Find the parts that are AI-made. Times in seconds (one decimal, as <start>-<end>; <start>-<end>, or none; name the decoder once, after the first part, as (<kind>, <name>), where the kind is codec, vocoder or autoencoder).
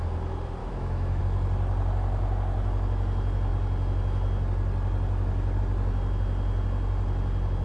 0.6-1.2 (autoencoder, DAC-VAE)